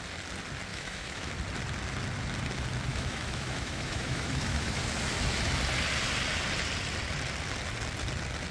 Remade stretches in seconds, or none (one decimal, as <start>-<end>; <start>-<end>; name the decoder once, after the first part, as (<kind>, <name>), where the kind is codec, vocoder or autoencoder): 0.7-1.3 (autoencoder, DAC-VAE); 2.9-4.8

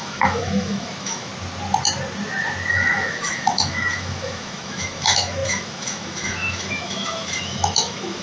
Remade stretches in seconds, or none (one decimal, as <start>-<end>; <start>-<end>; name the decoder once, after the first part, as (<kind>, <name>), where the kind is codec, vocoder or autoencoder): 0.0-1.3 (autoencoder, DAC-VAE); 2.7-8.2

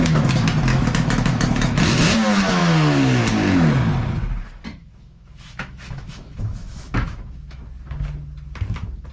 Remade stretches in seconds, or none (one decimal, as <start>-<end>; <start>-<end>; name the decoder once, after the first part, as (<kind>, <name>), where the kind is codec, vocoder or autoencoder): 0.7-1.8 (autoencoder, DAC-VAE); 4.7-7.6

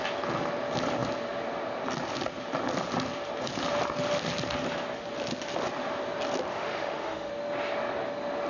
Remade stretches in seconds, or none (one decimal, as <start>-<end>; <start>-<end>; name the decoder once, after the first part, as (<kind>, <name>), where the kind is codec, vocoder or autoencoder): 6.5-7.3 (autoencoder, DAC-VAE)

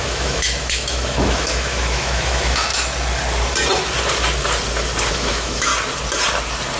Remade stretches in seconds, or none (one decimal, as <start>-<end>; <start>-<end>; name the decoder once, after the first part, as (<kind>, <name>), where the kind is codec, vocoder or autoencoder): 0.0-2.7 (autoencoder, DAC-VAE); 5.1-5.7